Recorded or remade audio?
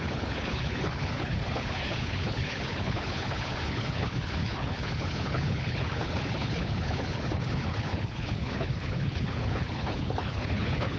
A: remade